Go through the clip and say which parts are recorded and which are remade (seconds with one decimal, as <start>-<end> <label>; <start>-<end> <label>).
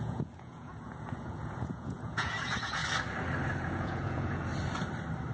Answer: 0.0-2.8 remade; 2.8-3.6 recorded; 3.6-4.5 remade; 4.5-5.3 recorded